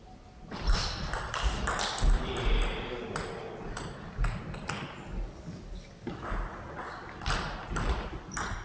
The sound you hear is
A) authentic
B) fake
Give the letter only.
A